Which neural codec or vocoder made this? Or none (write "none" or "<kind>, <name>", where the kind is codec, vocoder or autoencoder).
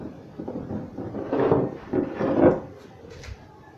none